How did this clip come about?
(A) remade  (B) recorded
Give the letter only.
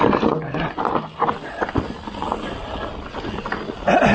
B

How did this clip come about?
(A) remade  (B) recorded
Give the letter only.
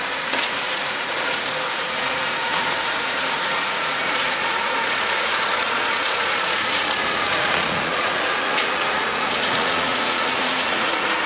A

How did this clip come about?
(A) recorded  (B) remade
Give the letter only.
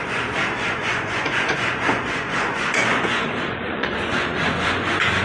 B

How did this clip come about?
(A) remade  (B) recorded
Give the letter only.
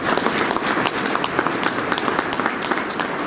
B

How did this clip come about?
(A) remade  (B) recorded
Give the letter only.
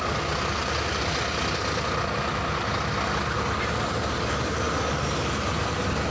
B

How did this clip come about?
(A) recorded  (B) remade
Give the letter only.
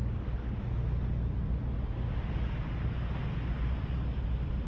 A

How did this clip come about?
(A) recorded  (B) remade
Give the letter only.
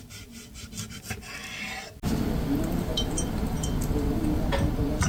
A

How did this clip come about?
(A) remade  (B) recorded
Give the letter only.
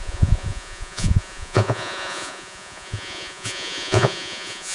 A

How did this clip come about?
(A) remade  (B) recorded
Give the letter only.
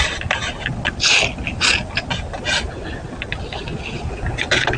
B